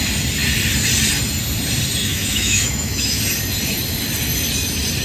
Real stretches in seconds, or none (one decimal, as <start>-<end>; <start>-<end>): 0.0-2.0; 3.2-5.0